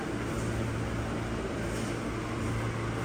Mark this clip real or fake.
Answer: real